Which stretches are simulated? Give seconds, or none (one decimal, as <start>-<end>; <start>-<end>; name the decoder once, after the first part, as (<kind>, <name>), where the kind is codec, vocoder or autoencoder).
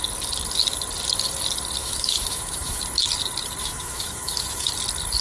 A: 1.8-2.8 (autoencoder, DAC-VAE); 3.6-4.7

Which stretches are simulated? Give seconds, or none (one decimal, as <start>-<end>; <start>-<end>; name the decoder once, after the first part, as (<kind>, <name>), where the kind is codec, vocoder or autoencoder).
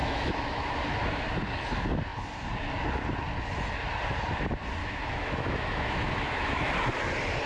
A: 0.0-0.8 (autoencoder, DAC-VAE); 4.8-6.7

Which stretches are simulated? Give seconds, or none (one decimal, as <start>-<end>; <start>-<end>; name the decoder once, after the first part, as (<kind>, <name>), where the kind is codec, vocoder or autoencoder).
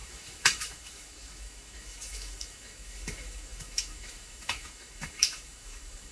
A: 0.0-6.1 (autoencoder, DAC-VAE)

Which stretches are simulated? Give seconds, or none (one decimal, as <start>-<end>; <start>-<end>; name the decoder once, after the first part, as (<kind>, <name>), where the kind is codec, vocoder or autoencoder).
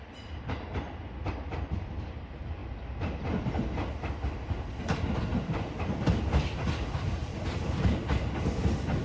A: none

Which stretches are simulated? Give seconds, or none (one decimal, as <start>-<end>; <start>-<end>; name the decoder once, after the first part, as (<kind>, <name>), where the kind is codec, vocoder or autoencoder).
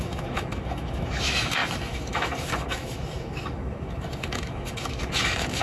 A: 0.0-5.6 (autoencoder, DAC-VAE)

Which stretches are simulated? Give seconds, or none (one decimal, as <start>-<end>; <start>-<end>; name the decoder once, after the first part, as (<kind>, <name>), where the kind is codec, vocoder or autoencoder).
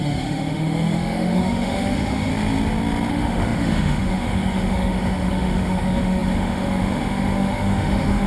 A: 0.0-2.3 (autoencoder, DAC-VAE); 3.1-8.3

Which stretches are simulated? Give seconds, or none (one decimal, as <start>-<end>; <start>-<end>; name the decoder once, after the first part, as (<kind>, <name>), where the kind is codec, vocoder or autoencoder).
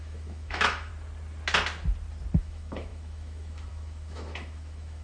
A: 0.0-0.9 (autoencoder, DAC-VAE); 2.4-5.0